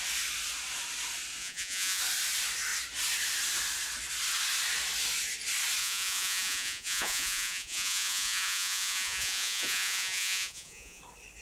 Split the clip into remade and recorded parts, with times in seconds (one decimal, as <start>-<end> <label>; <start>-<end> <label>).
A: 0.0-1.4 recorded; 1.4-2.0 remade; 2.0-5.8 recorded; 5.8-11.0 remade; 11.0-11.4 recorded